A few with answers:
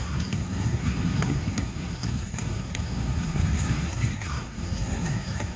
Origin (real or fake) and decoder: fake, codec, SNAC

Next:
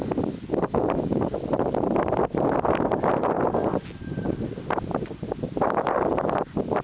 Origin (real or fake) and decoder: real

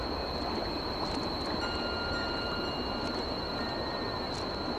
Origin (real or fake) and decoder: real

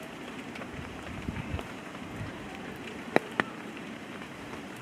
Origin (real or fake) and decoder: fake, vocoder, BigVGAN v2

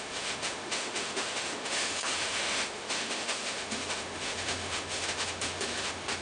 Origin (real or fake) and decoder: fake, autoencoder, DAC-VAE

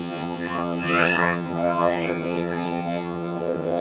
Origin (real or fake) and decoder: fake, vocoder, HiFi-GAN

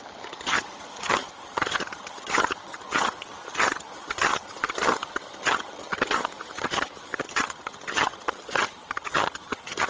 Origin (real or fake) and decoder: fake, vocoder, HiFi-GAN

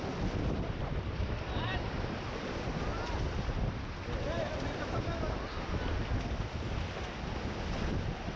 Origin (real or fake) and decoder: real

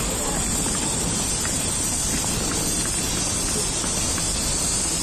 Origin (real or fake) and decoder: real